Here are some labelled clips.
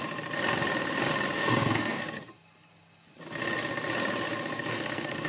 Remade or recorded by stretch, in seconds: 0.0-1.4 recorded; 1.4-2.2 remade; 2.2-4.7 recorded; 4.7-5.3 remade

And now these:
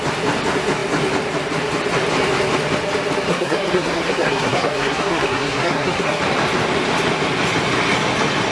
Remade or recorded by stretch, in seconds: 0.0-3.3 recorded; 3.3-6.2 remade; 6.2-8.5 recorded

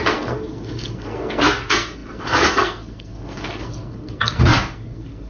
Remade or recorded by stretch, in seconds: 0.0-5.3 remade